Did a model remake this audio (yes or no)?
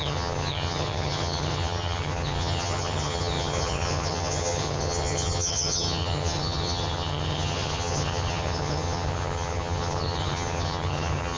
yes